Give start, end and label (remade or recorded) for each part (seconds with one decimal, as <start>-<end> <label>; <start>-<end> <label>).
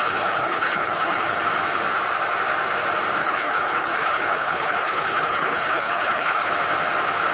0.0-1.4 remade; 1.4-3.2 recorded; 3.2-6.5 remade; 6.5-7.3 recorded